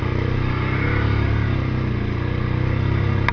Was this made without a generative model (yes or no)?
yes